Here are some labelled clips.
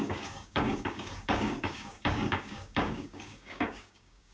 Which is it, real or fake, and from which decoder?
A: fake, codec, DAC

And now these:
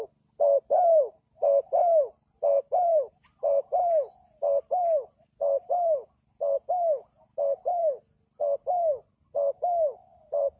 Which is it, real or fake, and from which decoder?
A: real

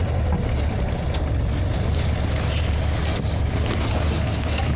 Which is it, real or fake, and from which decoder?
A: real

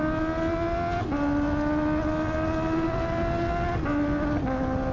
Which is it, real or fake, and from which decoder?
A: real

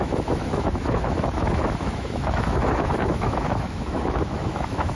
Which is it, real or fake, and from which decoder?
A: fake, autoencoder, DAC-VAE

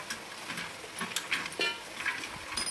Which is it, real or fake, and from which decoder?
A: real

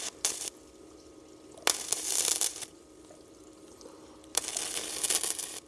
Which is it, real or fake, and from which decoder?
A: real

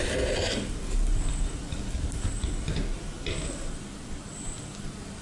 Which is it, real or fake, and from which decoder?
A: real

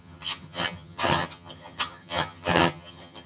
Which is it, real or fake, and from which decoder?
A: fake, vocoder, HiFi-GAN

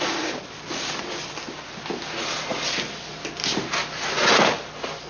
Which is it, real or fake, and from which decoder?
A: real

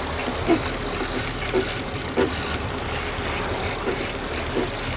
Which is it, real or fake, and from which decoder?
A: real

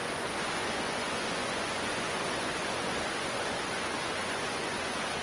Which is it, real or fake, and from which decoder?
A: fake, vocoder, Vocos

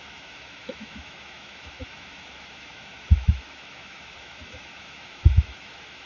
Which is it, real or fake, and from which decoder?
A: fake, autoencoder, DAC-VAE